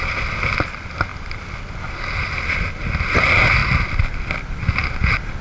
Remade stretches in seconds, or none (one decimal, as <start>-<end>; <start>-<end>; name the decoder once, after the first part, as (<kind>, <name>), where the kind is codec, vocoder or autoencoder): none